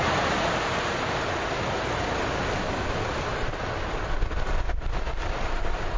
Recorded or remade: recorded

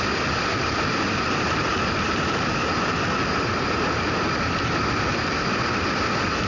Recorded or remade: recorded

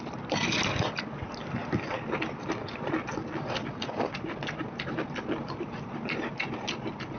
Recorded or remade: recorded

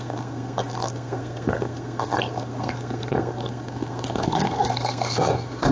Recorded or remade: remade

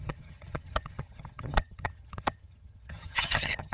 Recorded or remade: remade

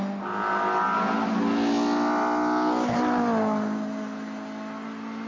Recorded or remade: recorded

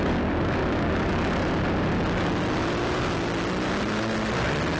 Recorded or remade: recorded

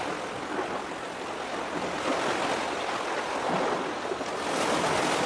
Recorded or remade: recorded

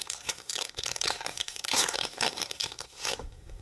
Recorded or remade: remade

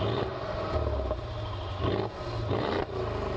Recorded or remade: recorded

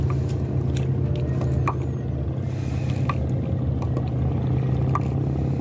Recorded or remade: recorded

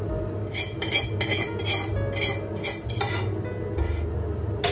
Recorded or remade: recorded